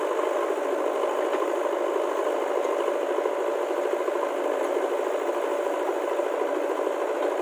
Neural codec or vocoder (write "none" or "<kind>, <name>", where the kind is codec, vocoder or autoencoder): none